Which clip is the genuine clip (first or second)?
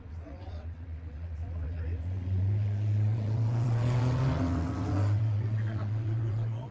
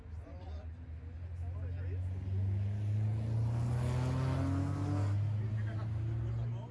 second